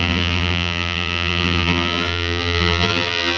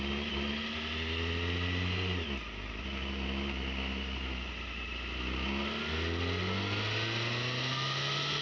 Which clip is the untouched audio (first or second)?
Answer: second